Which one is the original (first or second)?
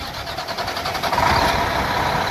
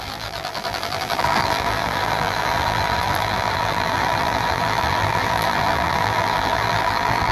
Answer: first